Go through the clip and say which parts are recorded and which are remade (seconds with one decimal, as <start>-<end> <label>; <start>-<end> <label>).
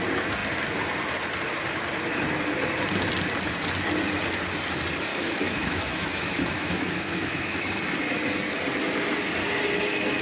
0.0-5.1 recorded; 5.1-7.8 remade; 7.8-10.2 recorded